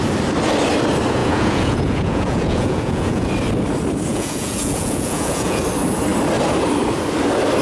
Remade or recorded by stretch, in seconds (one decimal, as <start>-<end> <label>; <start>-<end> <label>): 0.0-1.2 recorded; 1.2-3.3 remade; 3.3-4.1 recorded; 4.1-5.6 remade; 5.6-7.6 recorded